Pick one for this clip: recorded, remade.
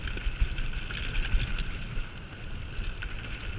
recorded